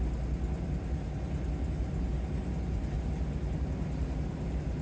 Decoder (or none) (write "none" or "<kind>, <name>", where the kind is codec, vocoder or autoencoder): none